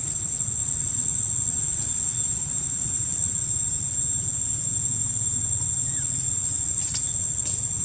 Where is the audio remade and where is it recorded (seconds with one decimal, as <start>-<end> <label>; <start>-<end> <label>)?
0.0-2.2 remade; 2.2-2.8 recorded; 2.8-3.4 remade; 3.4-6.1 recorded; 6.1-7.8 remade